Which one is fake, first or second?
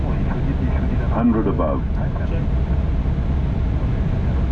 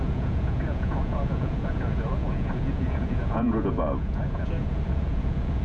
second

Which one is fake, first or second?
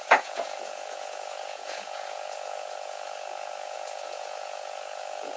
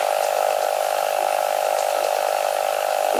first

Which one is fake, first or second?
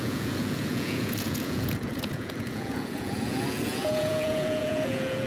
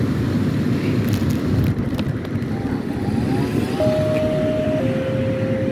first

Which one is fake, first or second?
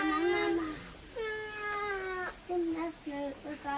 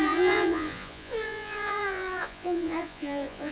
second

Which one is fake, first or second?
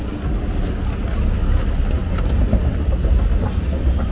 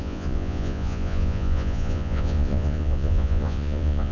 second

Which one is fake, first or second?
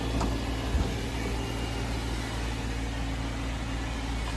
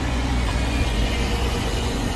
second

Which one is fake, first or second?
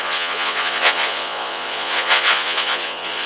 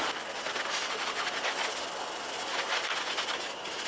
first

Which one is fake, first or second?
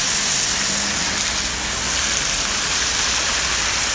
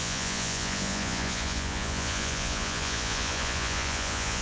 second